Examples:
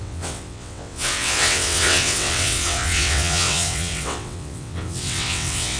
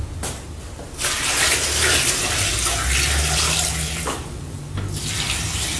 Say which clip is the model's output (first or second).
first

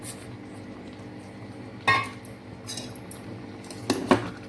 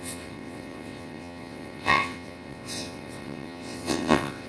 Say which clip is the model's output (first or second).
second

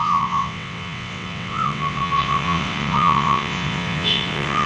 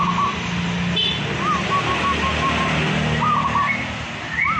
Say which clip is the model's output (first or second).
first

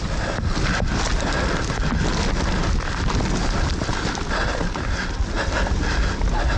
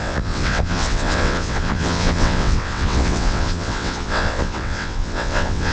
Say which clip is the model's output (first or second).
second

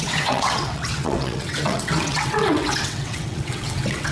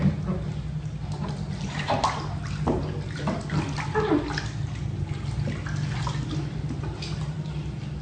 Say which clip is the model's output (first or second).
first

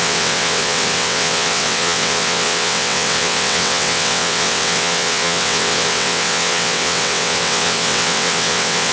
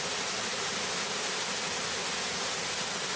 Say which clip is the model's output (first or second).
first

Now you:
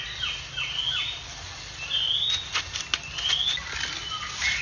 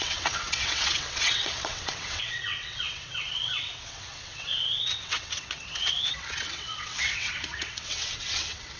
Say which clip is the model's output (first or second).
second